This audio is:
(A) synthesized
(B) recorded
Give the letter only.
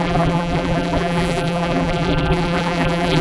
A